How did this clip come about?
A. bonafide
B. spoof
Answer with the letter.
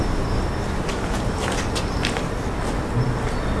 A